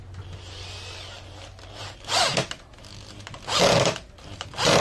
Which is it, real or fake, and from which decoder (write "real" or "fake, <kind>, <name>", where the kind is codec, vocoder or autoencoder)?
real